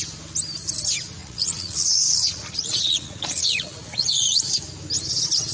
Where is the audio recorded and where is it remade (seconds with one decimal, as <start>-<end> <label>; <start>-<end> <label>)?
0.0-1.2 recorded; 1.2-4.5 remade; 4.5-5.5 recorded